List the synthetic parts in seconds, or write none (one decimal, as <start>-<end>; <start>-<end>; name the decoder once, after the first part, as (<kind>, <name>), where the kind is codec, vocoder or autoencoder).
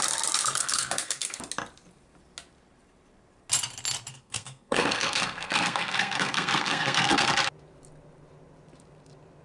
0.6-1.4 (codec, SNAC); 4.1-7.3